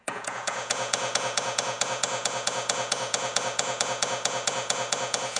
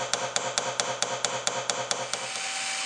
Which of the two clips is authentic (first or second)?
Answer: second